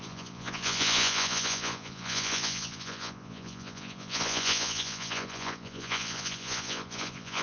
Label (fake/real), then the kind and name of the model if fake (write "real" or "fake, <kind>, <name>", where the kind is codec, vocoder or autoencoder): fake, vocoder, Vocos